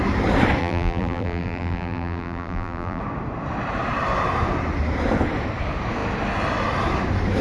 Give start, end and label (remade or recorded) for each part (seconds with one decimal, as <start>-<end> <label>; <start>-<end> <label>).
0.0-0.6 recorded; 0.6-3.0 remade; 3.0-7.4 recorded